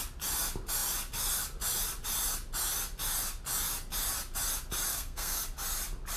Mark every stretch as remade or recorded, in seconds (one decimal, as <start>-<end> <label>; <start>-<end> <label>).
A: 0.0-4.9 recorded; 4.9-5.4 remade; 5.4-6.2 recorded